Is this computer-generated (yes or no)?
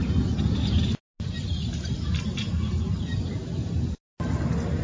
no